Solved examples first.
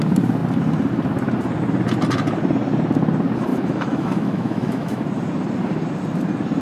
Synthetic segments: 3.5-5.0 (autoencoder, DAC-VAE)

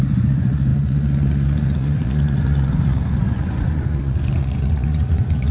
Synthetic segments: 0.0-5.5 (vocoder, Vocos)

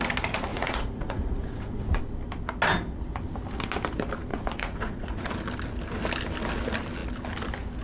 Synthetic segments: 0.5-2.0 (vocoder, Vocos); 4.3-5.3

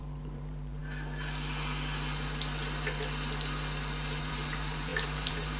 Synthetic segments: 0.0-0.8 (vocoder, BigVGAN v2); 4.2-5.6

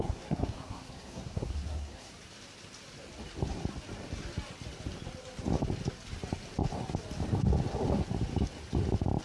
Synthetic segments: 0.0-2.1 (codec, SNAC)